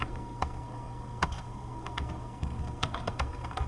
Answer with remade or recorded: remade